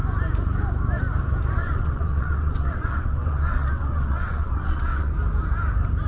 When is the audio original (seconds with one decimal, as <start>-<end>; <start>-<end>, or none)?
0.0-1.6; 5.1-6.1